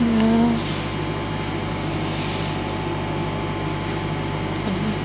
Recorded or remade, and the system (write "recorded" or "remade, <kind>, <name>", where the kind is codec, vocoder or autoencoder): recorded